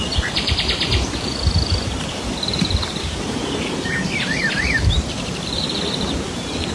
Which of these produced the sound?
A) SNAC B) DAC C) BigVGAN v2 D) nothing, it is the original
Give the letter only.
C